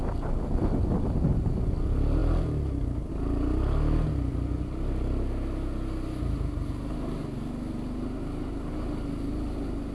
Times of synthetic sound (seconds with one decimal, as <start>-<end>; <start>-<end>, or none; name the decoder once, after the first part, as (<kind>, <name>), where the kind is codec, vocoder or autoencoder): none